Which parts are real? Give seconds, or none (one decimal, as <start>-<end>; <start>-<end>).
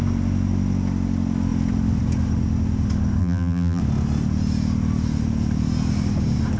0.0-3.2; 3.8-6.6